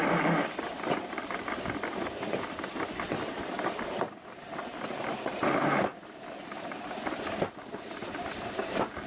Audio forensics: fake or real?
real